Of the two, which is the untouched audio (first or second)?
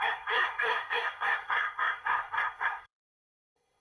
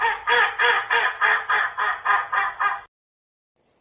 second